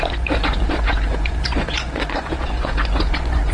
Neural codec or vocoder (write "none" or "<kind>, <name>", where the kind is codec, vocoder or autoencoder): vocoder, Vocos